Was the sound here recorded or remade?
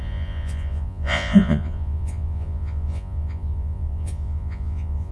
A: remade